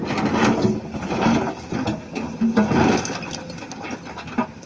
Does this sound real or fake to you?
real